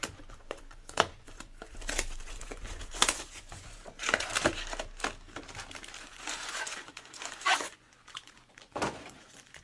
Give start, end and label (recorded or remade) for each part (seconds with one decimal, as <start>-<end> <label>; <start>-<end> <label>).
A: 0.0-4.3 remade; 4.3-6.0 recorded; 6.0-9.6 remade